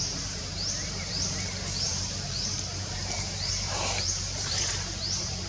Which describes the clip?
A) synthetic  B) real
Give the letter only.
A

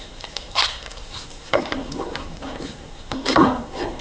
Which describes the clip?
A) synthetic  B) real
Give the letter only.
A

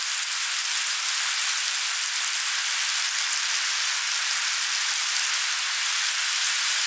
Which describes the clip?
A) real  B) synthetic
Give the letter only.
A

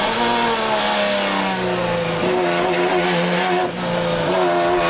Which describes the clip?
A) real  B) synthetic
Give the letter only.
A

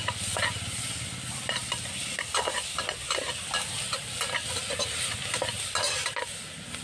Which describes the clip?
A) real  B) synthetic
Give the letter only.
A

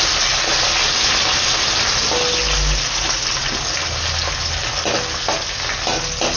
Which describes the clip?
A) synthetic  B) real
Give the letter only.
B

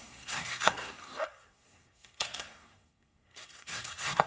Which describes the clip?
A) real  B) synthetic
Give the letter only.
B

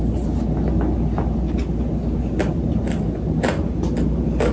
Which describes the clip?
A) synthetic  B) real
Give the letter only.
B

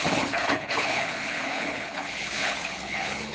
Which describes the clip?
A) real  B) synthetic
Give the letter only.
B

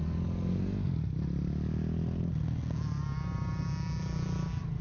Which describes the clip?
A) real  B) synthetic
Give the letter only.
A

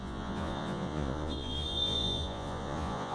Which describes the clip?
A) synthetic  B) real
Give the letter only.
A